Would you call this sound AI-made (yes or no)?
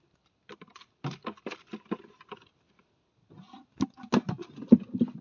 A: no